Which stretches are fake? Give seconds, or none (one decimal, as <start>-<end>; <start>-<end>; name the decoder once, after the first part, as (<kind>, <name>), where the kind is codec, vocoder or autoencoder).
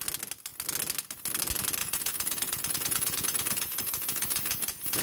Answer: 1.8-5.0 (vocoder, Vocos)